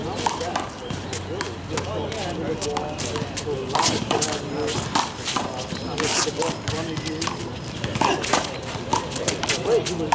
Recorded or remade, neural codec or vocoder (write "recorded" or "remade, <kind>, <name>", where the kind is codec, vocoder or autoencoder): recorded